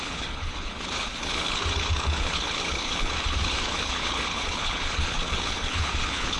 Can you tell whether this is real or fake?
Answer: fake